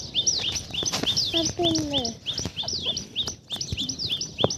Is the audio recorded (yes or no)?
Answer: yes